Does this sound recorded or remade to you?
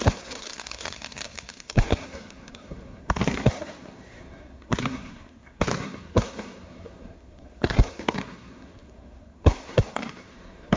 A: remade